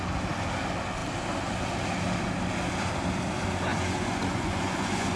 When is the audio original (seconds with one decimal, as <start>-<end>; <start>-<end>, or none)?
0.0-3.7